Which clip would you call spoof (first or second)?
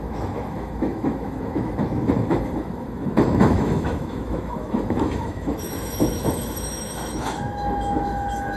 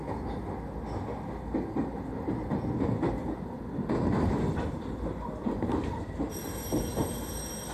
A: first